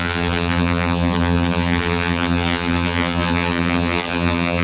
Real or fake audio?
fake